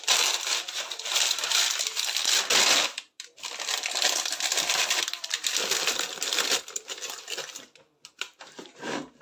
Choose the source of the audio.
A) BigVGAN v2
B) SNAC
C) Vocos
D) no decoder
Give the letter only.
D